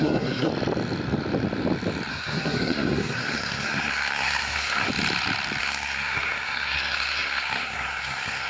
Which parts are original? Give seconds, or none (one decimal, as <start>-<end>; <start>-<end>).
0.5-2.1; 4.9-5.6